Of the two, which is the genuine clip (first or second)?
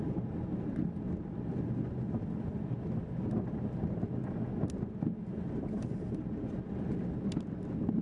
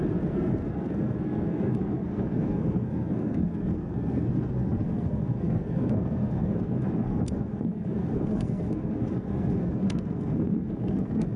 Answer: first